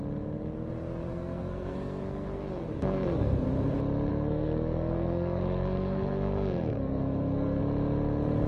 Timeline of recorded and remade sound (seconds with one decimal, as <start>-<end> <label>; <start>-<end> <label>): 0.0-1.1 recorded; 1.1-3.4 remade; 3.4-4.1 recorded; 4.1-7.6 remade; 7.6-8.5 recorded